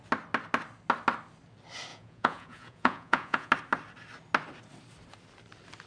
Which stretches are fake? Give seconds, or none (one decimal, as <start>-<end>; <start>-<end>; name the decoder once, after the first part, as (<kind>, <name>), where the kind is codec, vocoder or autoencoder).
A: 1.9-3.5 (vocoder, Vocos)